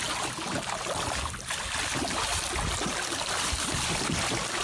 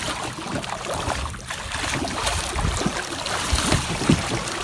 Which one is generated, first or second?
second